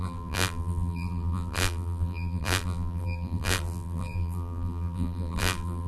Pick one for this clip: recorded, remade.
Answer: remade